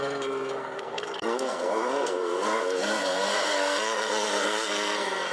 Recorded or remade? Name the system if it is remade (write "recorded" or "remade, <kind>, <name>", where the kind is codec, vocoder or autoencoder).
remade, codec, SNAC